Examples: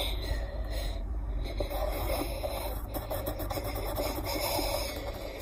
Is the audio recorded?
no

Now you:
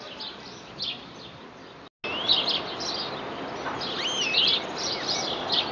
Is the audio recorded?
yes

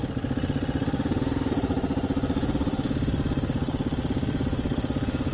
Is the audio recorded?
yes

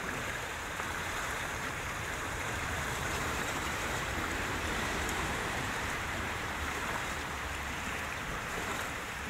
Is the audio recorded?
no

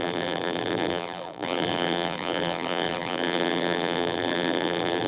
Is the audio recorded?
no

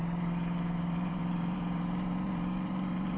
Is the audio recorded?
no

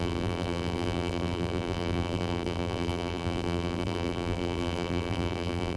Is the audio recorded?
no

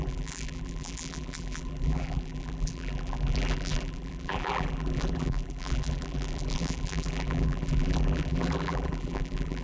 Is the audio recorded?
no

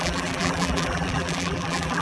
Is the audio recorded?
no